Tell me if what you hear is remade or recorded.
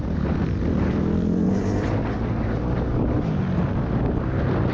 recorded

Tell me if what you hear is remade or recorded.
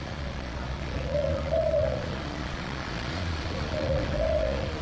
remade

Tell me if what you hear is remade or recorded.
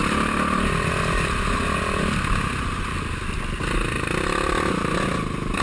recorded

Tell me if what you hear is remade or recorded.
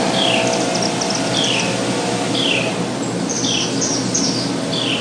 remade